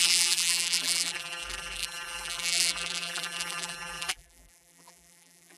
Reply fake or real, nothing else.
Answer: fake